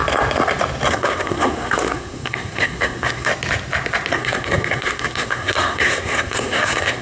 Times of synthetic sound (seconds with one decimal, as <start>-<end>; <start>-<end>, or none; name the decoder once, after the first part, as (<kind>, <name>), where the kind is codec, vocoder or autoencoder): 0.9-3.3 (codec, SNAC); 4.1-7.0